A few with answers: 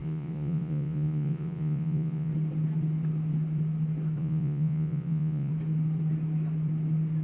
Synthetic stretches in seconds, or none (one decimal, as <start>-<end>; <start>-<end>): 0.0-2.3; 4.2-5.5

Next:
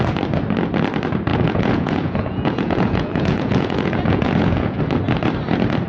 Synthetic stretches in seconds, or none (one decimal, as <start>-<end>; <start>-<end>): 1.3-4.8

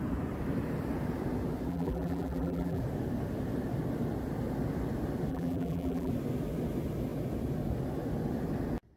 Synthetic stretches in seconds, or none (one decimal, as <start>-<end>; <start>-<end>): 1.7-2.8; 5.3-6.1

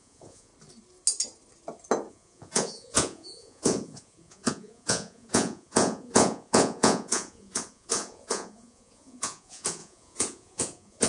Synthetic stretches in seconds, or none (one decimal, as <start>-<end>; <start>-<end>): 0.0-0.5; 2.1-11.1

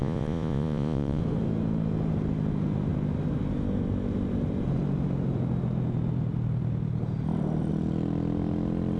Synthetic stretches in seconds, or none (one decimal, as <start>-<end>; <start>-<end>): 0.0-1.2

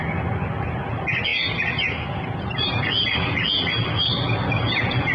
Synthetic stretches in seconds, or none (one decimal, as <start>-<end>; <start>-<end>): none

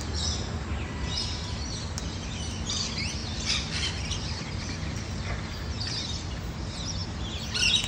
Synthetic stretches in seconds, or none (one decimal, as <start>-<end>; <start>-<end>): none